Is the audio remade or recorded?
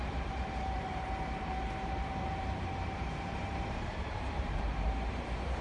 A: remade